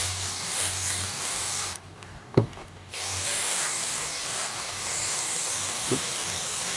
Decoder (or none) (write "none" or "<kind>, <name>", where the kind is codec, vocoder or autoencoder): codec, DAC